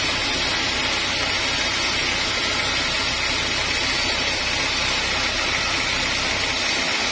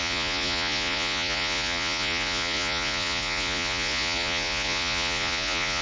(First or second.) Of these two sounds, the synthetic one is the second